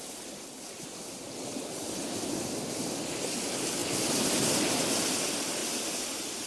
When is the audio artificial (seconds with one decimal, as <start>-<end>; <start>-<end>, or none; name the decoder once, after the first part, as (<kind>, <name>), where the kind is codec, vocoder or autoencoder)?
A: none